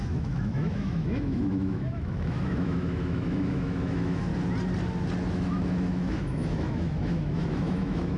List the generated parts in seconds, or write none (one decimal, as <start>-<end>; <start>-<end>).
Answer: 0.0-4.3; 5.3-8.2